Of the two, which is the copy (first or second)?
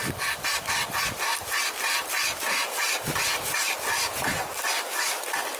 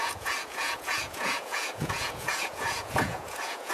second